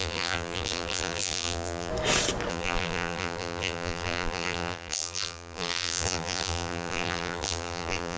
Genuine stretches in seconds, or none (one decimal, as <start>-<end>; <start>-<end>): 1.9-2.5